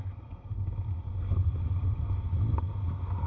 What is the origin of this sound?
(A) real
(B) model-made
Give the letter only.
A